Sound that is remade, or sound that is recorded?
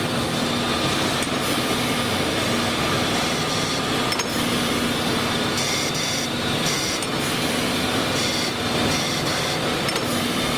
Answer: recorded